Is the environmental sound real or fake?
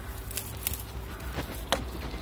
real